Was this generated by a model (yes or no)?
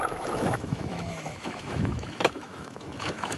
yes